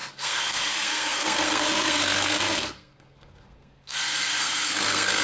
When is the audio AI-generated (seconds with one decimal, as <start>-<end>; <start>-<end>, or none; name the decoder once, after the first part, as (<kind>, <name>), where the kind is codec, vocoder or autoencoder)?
0.0-5.2 (codec, SNAC)